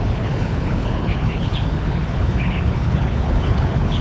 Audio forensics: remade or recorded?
remade